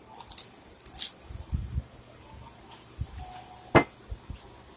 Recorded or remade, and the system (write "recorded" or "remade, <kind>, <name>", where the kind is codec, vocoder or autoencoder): recorded